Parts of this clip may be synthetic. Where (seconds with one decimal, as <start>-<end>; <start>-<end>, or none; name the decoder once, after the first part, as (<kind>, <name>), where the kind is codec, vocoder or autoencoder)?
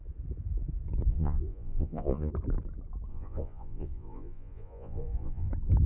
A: 1.1-2.3 (vocoder, Vocos); 3.1-5.5